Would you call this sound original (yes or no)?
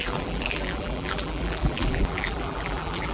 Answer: no